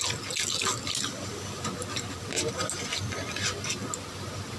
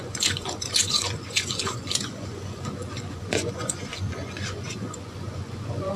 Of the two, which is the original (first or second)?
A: first